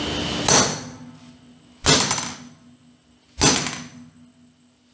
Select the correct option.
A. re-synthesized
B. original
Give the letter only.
B